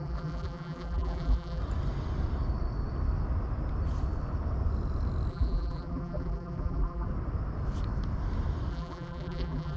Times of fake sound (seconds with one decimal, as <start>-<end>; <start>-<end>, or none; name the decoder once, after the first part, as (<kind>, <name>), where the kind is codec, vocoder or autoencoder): 0.0-1.6 (vocoder, BigVGAN v2); 5.3-7.1; 8.7-9.8